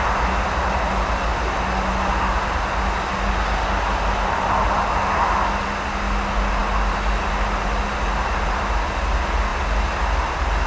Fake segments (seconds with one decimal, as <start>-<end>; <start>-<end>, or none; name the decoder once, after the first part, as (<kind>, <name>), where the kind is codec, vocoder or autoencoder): none